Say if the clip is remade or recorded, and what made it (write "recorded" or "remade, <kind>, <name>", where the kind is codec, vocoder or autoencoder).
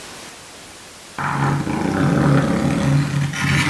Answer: recorded